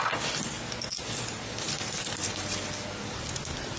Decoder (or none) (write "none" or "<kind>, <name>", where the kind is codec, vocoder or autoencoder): vocoder, BigVGAN v2